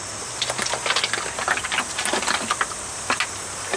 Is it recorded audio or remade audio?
recorded